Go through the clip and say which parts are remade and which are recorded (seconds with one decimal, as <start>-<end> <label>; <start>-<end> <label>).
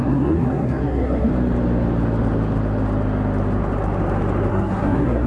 0.0-1.3 remade; 1.3-4.5 recorded; 4.5-5.3 remade